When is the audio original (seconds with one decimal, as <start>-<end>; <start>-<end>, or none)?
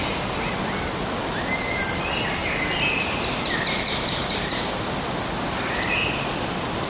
0.0-6.9